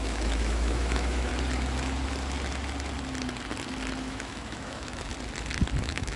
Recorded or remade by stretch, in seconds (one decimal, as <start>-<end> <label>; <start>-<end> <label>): 0.0-1.3 remade; 1.3-4.0 recorded; 4.0-5.1 remade; 5.1-5.8 recorded; 5.8-6.2 remade